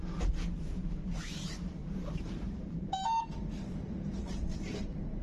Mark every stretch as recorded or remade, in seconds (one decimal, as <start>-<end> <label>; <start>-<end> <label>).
0.0-1.8 recorded; 1.8-5.2 remade